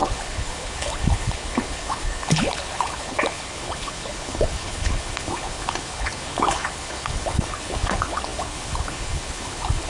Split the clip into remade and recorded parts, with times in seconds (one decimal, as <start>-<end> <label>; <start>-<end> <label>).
0.0-9.9 remade

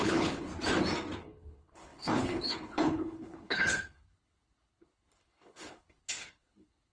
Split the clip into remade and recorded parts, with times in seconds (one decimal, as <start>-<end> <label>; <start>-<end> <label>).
0.0-0.5 remade; 0.5-1.2 recorded; 1.2-6.9 remade